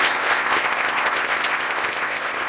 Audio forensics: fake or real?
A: fake